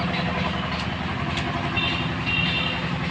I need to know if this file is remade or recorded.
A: recorded